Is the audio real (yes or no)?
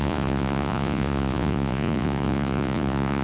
no